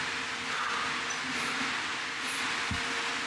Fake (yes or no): no